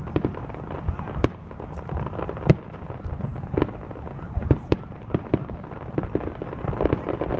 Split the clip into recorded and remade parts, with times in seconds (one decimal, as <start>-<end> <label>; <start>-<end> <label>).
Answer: 0.0-7.4 recorded